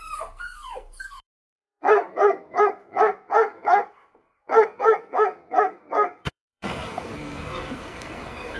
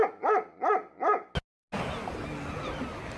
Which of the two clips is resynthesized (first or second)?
first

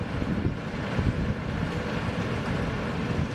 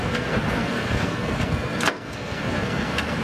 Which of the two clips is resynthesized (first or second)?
second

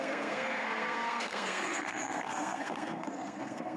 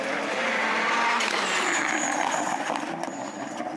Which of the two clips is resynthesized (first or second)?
first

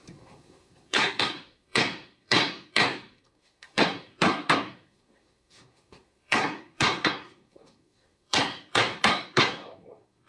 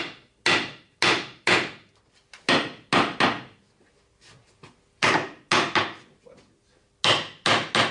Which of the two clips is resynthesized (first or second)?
first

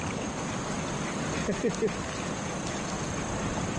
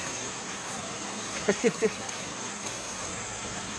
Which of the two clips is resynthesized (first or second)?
second